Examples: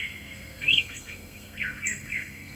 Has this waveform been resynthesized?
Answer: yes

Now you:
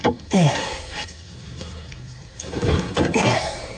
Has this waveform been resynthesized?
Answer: yes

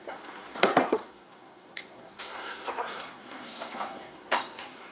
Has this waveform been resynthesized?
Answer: yes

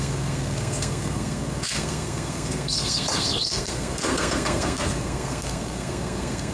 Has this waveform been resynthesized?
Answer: yes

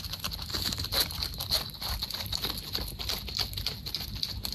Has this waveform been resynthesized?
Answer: no